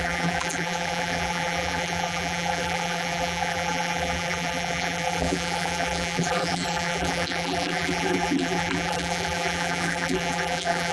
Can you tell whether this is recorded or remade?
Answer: remade